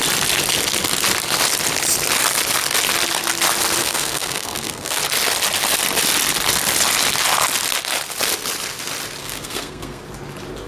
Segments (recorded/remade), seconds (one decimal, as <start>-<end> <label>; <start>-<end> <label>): 0.0-3.8 recorded; 3.8-5.0 remade; 5.0-9.2 recorded; 9.2-10.0 remade; 10.0-10.7 recorded